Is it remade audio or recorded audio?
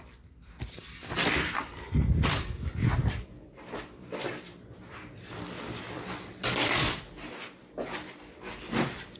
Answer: remade